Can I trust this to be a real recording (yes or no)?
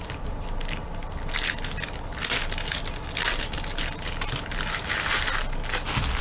yes